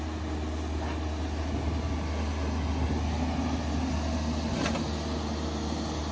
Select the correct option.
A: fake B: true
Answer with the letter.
B